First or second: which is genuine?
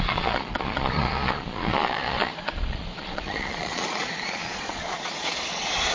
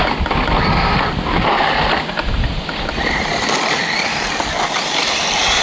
second